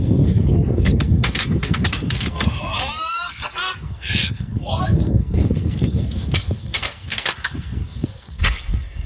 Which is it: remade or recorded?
remade